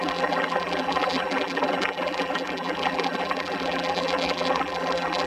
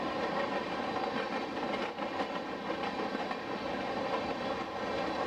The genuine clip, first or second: second